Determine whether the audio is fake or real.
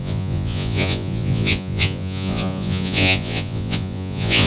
fake